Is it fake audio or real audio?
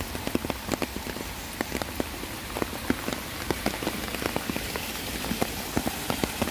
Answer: real